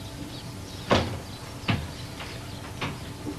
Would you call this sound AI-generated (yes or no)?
no